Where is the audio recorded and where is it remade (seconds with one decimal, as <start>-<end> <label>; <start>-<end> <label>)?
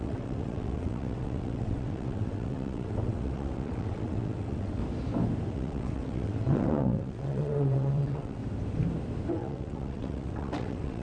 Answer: 0.0-4.8 remade; 4.8-5.5 recorded; 5.5-8.4 remade; 8.4-9.3 recorded; 9.3-11.0 remade